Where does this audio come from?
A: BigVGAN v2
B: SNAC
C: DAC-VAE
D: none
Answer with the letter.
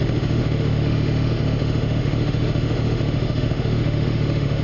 C